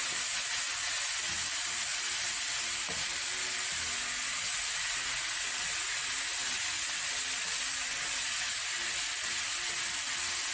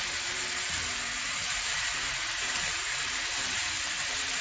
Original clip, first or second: first